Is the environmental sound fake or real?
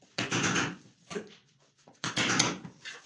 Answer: fake